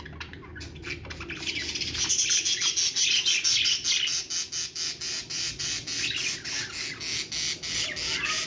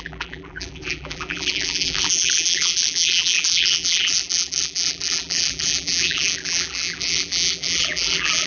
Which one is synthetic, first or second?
second